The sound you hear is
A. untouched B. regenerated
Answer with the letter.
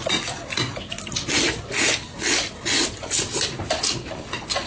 A